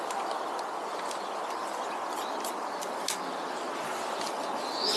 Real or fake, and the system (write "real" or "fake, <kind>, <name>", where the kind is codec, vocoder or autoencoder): real